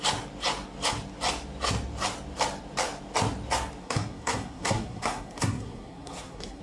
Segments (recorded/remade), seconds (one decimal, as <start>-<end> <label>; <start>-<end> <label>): 0.0-3.8 recorded; 3.8-6.6 remade